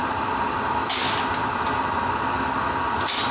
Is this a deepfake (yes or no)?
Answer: no